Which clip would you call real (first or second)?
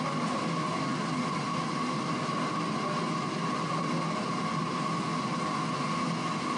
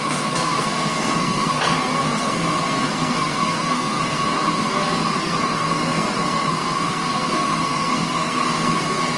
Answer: first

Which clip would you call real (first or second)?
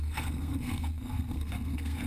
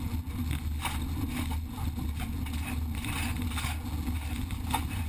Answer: second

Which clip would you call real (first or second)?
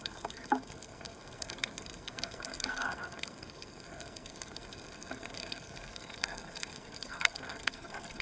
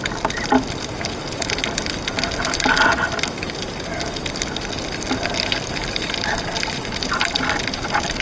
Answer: second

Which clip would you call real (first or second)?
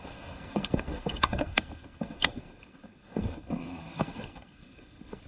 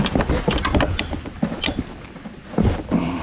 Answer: second